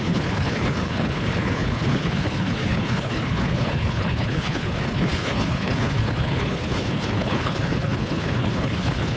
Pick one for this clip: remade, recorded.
remade